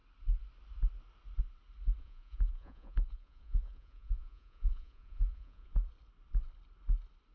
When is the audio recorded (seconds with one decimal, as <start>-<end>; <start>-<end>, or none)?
0.0-2.0; 5.7-7.3